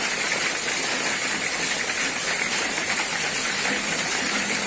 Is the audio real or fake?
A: real